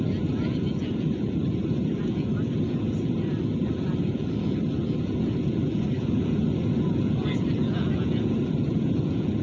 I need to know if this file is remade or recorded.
remade